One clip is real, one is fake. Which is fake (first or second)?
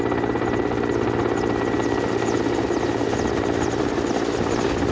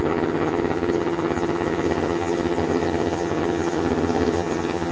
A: second